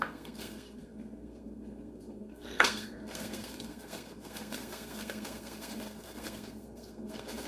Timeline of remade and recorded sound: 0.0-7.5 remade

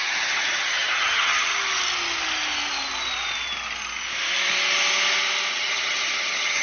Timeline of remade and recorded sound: 0.0-1.5 remade; 1.5-5.5 recorded; 5.5-6.6 remade

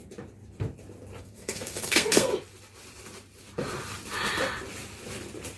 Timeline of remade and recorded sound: 0.0-1.2 recorded; 1.2-2.3 remade; 2.3-5.6 recorded

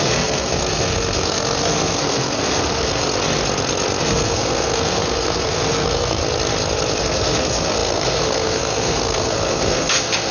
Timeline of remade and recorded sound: 0.0-3.0 remade; 3.0-4.0 recorded; 4.0-6.2 remade; 6.2-7.0 recorded; 7.0-10.3 remade